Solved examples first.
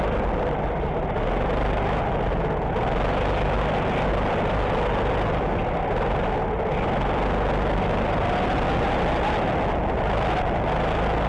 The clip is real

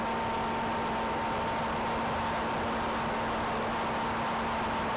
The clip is real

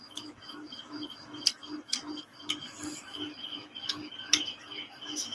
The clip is fake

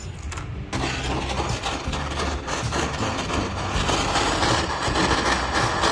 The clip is real